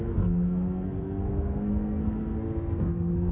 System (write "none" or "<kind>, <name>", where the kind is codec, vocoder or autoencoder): codec, SNAC